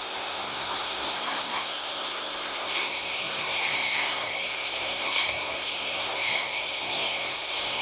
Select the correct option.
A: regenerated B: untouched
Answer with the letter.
A